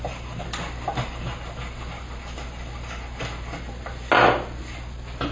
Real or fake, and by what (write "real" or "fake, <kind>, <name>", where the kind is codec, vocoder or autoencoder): real